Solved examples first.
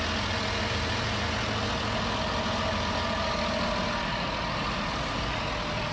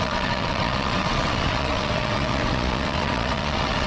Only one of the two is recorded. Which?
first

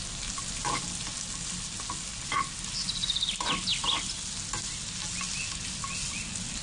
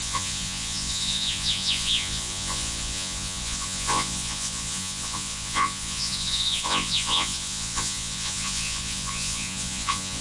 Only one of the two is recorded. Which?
first